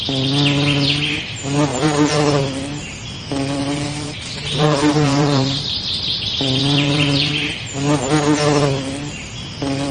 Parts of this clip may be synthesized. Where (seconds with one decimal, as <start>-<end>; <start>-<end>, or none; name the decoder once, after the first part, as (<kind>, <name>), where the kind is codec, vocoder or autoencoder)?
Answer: 1.7-2.4 (vocoder, BigVGAN v2); 3.6-7.6